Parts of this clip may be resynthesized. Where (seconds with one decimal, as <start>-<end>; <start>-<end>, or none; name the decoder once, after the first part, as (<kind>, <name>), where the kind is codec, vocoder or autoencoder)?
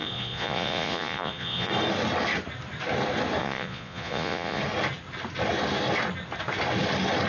0.0-1.7 (vocoder, Vocos); 3.4-4.6